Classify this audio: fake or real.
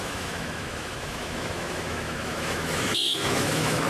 fake